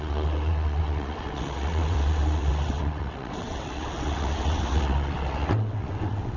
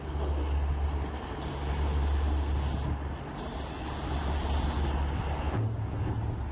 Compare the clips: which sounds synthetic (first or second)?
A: first